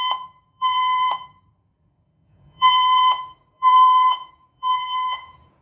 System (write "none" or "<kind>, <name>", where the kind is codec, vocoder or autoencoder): vocoder, Vocos